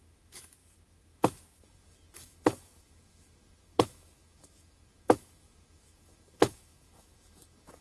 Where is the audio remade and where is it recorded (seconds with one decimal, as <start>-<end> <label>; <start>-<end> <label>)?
0.0-7.8 remade